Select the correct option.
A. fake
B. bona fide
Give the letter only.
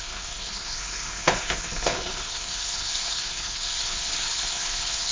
A